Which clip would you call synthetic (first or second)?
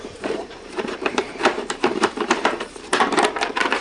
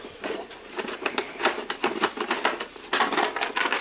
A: first